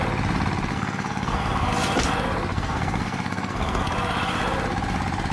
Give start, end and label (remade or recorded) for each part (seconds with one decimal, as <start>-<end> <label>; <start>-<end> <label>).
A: 0.0-0.7 recorded; 0.7-1.7 remade; 1.7-2.5 recorded; 2.5-3.9 remade; 3.9-5.3 recorded